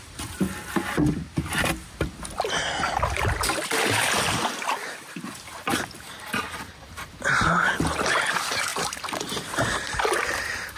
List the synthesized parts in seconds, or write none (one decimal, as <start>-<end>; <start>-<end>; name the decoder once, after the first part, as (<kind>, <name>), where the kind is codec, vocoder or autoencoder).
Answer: none